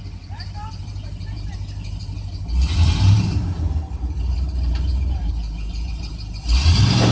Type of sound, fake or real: fake